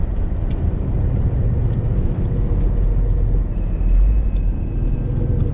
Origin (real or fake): real